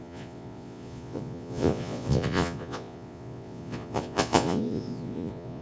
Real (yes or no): no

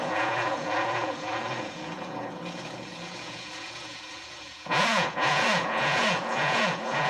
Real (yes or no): no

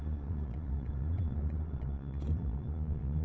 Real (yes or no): no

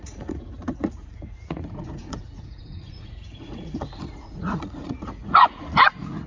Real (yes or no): no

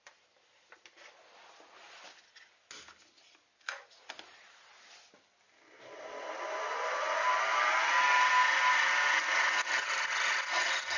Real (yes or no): yes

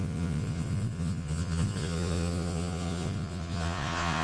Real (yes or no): no